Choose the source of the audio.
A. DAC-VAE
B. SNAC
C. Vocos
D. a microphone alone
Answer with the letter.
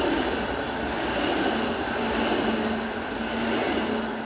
D